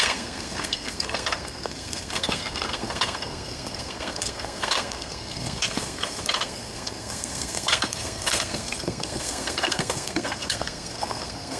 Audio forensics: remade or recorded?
remade